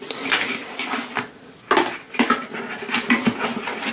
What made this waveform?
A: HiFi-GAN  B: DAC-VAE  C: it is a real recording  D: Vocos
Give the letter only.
C